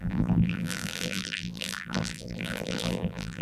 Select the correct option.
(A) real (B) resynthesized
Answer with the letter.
B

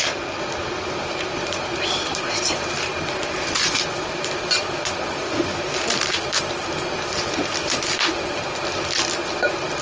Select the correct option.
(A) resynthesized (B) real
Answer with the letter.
A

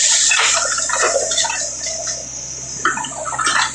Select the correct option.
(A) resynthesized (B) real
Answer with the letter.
B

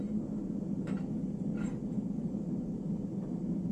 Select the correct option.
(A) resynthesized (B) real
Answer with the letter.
B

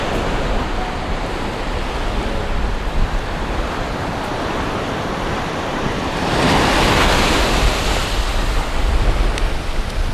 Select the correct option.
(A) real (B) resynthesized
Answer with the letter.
A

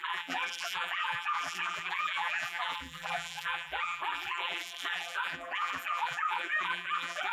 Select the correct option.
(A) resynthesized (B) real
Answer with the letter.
A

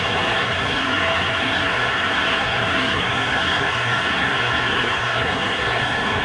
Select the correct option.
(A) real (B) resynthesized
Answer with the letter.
B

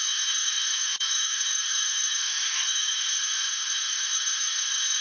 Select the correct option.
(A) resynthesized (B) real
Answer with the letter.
A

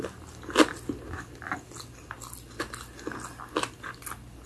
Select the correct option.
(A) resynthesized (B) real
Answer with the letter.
B